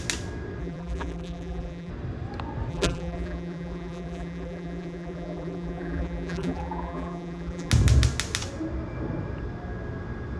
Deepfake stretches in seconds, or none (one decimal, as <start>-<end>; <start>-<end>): 0.6-1.9; 2.7-7.7